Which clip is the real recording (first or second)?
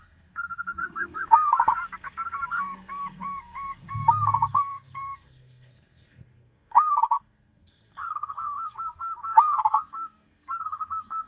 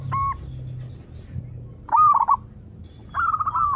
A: second